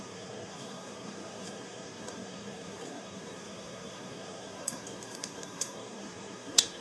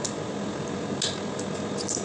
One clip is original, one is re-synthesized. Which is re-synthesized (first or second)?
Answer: first